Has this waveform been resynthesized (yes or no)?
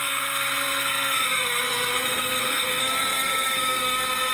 yes